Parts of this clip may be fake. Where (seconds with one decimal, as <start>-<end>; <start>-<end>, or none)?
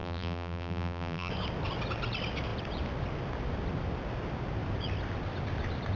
0.0-1.3